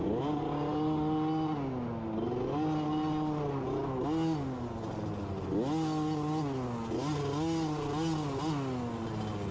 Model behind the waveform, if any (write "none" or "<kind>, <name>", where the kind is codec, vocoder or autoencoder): none